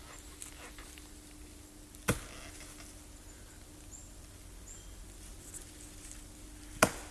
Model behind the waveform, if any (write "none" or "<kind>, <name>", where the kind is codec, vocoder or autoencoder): none